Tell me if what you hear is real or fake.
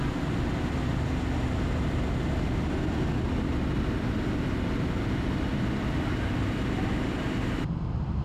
real